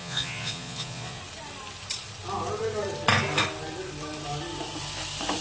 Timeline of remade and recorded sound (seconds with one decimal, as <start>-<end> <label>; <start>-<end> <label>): 0.0-1.2 remade; 1.2-5.4 recorded